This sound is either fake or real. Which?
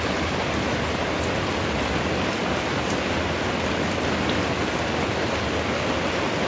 real